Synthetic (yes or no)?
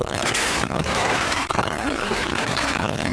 yes